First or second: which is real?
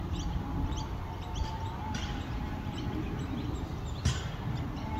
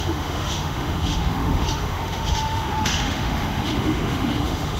first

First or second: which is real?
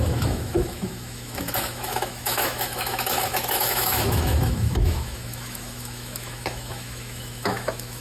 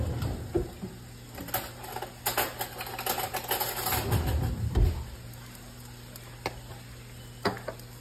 second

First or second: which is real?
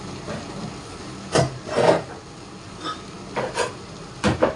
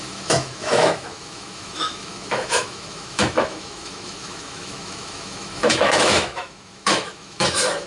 first